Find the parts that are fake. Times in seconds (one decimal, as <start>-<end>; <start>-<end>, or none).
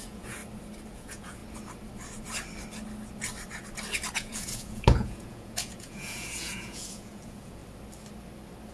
0.0-0.4; 0.9-1.4; 4.1-7.6